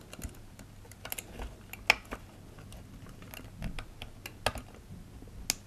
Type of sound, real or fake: real